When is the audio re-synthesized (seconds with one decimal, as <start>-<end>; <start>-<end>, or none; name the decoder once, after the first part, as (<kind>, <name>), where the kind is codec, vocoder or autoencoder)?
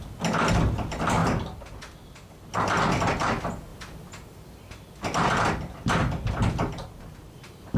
none